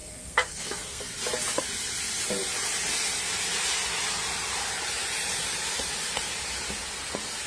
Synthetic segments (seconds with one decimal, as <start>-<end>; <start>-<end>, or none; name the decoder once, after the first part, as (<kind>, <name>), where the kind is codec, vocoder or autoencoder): 0.0-1.0 (codec, SNAC)